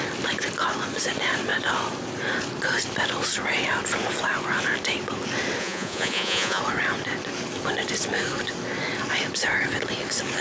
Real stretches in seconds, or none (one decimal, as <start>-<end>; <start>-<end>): 0.0-5.6; 6.6-10.4